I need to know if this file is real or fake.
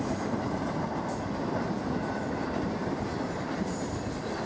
real